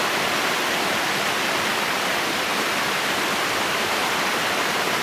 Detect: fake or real real